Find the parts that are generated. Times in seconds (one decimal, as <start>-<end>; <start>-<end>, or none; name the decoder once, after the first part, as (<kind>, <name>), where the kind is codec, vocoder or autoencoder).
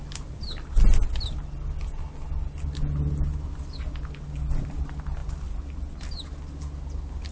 none